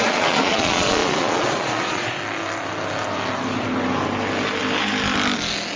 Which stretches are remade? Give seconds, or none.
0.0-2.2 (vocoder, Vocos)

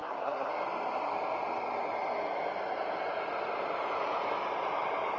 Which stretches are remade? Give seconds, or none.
0.0-0.5 (codec, SNAC)

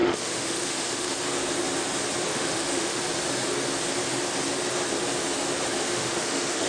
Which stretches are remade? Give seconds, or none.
0.0-1.1 (autoencoder, DAC-VAE); 2.3-3.0; 5.8-6.7

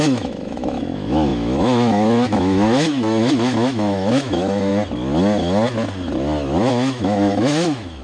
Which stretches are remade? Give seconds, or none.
0.0-4.7 (autoencoder, DAC-VAE); 6.7-8.0

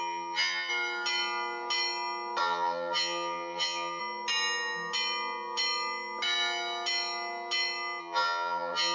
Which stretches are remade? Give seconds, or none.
0.0-0.7 (vocoder, HiFi-GAN); 2.4-4.0; 8.0-8.9

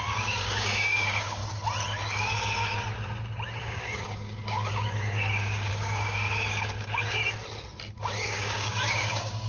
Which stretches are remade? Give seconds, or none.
0.0-1.4 (codec, DAC); 3.6-7.2; 7.9-9.5